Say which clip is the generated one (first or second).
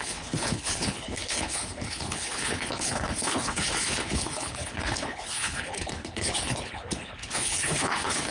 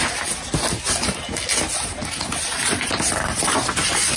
first